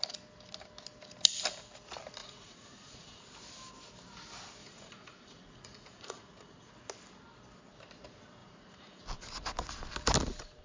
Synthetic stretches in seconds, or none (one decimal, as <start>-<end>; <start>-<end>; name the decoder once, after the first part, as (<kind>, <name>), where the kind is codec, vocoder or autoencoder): 2.2-3.2 (vocoder, Vocos); 4.6-6.7; 8.4-9.0